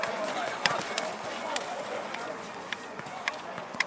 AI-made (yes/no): yes